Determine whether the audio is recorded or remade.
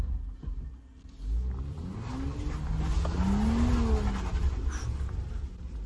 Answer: recorded